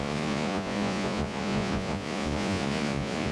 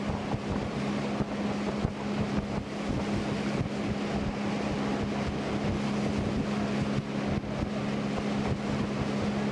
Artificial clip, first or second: first